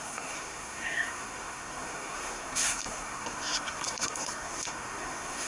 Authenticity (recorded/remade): remade